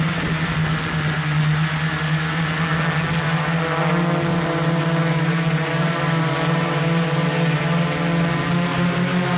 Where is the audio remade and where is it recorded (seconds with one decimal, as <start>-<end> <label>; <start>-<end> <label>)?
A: 0.0-4.3 recorded; 4.3-7.6 remade; 7.6-8.7 recorded; 8.7-9.4 remade